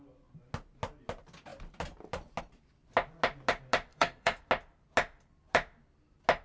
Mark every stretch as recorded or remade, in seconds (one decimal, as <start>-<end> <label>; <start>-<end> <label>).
0.0-3.9 recorded; 3.9-4.4 remade; 4.4-6.4 recorded